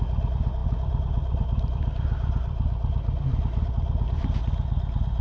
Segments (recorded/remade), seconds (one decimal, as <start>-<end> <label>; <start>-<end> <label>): 0.0-5.2 recorded